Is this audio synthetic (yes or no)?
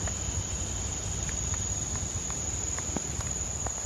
no